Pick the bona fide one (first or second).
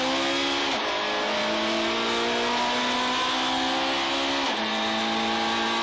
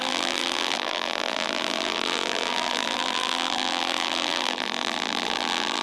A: first